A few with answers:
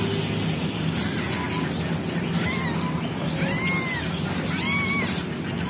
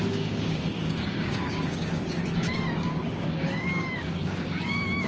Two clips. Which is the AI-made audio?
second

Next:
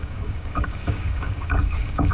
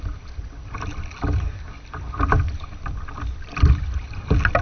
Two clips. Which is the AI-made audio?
first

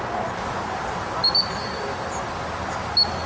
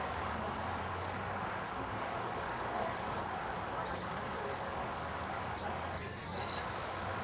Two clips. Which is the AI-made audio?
second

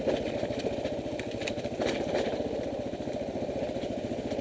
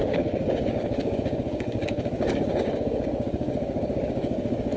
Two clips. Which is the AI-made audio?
second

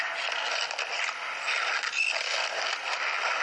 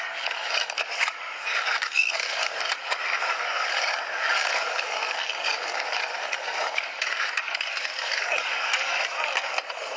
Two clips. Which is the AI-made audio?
second